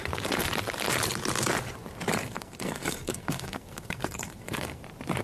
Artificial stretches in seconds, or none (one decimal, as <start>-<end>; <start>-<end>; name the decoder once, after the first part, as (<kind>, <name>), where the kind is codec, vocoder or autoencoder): 2.2-4.8 (codec, SNAC)